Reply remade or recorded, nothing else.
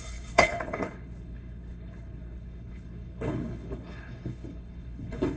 remade